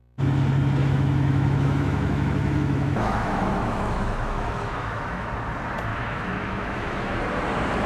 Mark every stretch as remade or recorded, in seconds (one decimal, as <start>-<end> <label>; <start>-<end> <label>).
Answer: 0.0-0.8 recorded; 0.8-5.3 remade; 5.3-5.9 recorded; 5.9-7.2 remade; 7.2-7.9 recorded